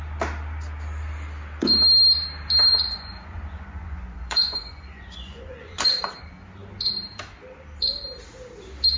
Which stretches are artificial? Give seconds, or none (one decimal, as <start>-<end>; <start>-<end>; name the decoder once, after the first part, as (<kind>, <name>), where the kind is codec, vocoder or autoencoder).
2.7-6.1 (vocoder, Vocos)